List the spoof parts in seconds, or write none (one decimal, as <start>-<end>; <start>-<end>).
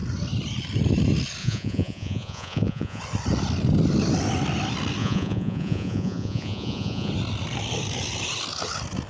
1.4-3.0; 5.0-7.1